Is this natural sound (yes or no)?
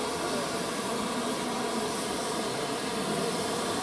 yes